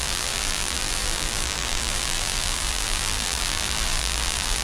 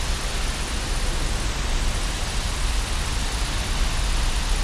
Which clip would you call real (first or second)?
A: second